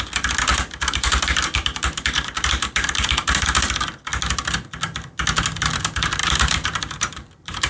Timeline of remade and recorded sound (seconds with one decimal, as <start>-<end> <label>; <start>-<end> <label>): 0.0-0.5 recorded; 0.5-2.9 remade; 2.9-6.2 recorded; 6.2-7.7 remade